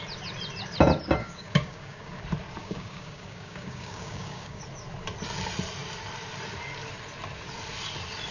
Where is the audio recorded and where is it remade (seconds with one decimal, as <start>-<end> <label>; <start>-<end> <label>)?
0.0-1.2 recorded; 1.2-2.2 remade; 2.2-2.6 recorded; 2.6-4.6 remade; 4.6-8.3 recorded

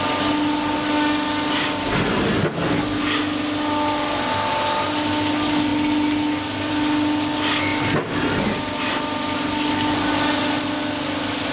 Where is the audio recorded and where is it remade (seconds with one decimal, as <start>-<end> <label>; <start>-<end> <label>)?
0.0-11.5 recorded

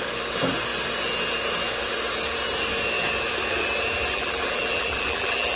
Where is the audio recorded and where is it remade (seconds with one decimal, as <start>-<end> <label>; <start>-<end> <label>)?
0.0-4.0 recorded; 4.0-5.6 remade

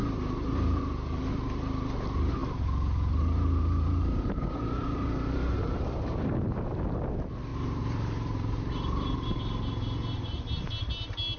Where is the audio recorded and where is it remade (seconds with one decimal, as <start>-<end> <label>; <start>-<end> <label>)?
0.0-1.3 remade; 1.3-2.4 recorded; 2.4-6.0 remade; 6.0-7.5 recorded; 7.5-9.3 remade; 9.3-11.4 recorded

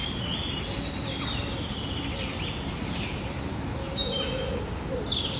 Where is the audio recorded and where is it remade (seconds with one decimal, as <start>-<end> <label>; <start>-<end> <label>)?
0.0-3.5 recorded; 3.5-4.1 remade; 4.1-5.4 recorded